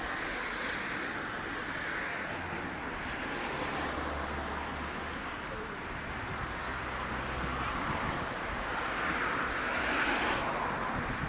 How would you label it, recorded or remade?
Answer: recorded